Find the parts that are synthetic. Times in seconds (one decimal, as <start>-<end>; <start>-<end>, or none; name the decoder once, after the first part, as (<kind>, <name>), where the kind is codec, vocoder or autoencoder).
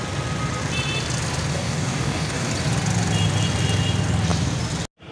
1.5-2.5 (codec, DAC)